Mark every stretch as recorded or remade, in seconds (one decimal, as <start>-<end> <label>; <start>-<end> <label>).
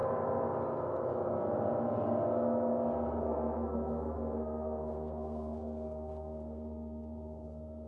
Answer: 0.0-3.2 recorded; 3.2-7.9 remade